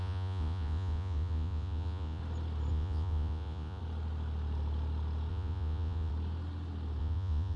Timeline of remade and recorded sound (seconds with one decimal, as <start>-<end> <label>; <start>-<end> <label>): 0.0-2.2 remade; 2.2-2.7 recorded; 2.7-3.8 remade; 3.8-5.3 recorded; 5.3-6.1 remade; 6.1-7.0 recorded; 7.0-7.6 remade